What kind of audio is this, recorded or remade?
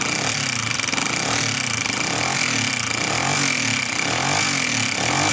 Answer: recorded